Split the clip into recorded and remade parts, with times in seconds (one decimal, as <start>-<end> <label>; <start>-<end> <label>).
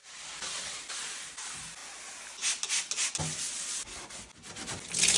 0.0-5.2 recorded